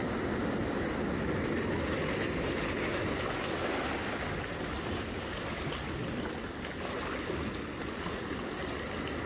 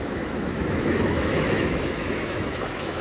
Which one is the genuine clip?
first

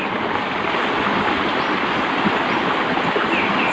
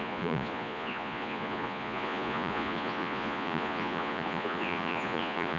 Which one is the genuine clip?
first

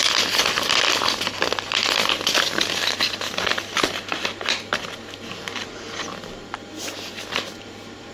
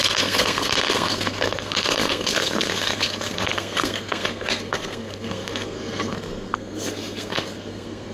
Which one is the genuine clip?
first